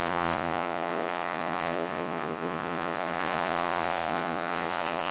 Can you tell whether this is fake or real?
fake